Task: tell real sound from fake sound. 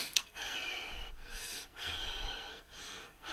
fake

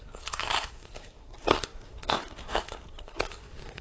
fake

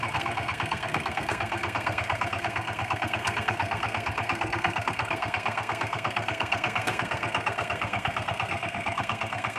fake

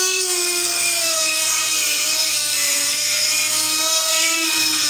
fake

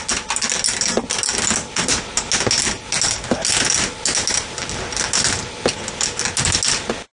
real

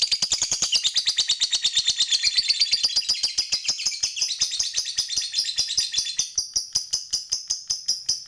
real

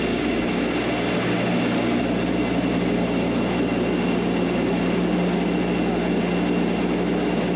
real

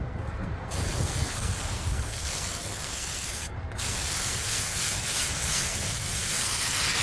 fake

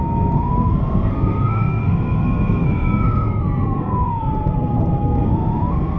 fake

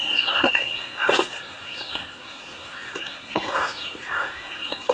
fake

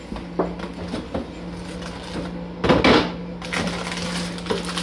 real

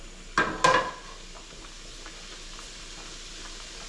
real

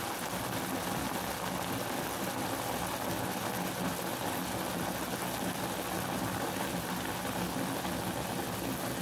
real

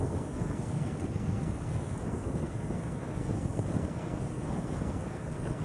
fake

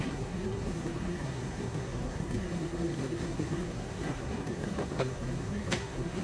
fake